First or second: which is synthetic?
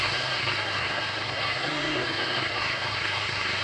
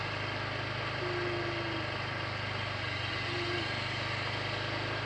first